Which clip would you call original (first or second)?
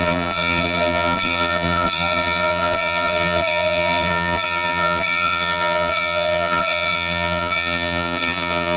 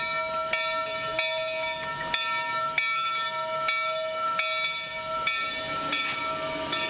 second